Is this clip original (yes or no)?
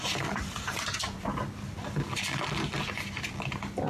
no